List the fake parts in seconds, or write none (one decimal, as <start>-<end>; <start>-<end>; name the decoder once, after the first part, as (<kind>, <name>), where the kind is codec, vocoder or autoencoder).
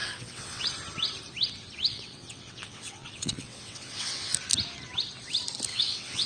0.0-0.6 (vocoder, WaveNeXt); 1.9-4.3; 5.7-6.3